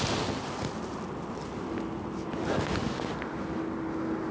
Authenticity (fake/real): real